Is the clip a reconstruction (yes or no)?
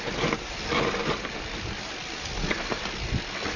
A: no